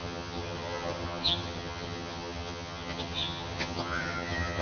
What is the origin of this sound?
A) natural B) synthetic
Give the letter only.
B